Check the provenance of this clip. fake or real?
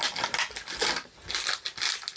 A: real